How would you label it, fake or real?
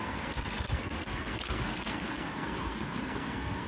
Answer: fake